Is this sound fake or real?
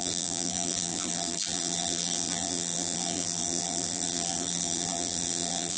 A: fake